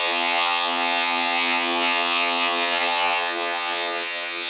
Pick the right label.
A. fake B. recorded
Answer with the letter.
A